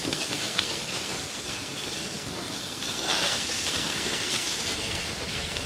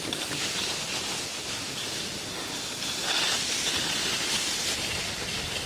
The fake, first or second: first